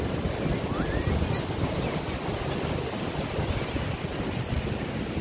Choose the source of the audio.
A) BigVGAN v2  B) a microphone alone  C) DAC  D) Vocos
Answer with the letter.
B